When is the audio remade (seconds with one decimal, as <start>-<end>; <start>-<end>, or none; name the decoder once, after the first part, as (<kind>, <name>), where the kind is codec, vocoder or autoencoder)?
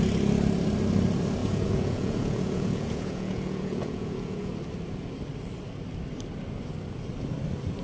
1.4-4.5 (vocoder, Vocos)